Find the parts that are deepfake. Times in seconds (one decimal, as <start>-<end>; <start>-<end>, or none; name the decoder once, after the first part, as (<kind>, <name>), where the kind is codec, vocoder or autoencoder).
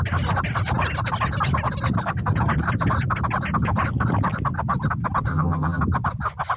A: 5.3-5.8 (vocoder, HiFi-GAN)